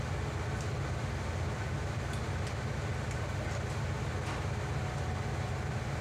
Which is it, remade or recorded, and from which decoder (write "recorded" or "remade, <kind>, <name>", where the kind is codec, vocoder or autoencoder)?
recorded